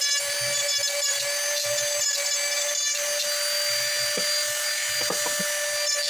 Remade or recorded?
recorded